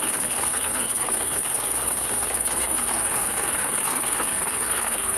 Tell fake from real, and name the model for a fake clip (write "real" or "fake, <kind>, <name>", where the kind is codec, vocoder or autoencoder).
fake, codec, SNAC